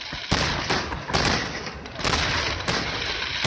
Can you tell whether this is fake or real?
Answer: real